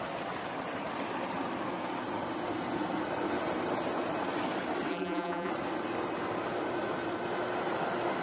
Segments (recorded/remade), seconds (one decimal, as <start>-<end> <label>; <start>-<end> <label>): 0.0-4.9 recorded; 4.9-5.5 remade; 5.5-8.2 recorded